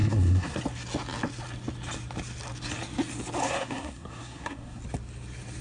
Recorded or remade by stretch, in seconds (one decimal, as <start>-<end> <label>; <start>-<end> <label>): 0.0-0.6 remade; 0.6-3.4 recorded; 3.4-4.8 remade; 4.8-5.6 recorded